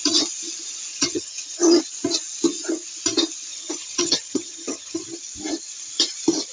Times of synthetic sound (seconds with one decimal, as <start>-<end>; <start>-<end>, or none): 0.9-1.8; 3.5-5.0